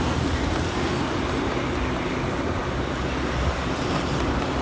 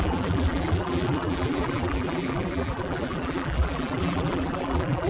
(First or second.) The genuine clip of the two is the first